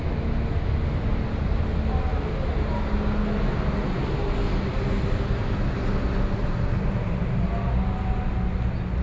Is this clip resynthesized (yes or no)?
no